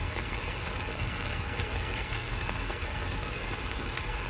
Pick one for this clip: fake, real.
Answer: fake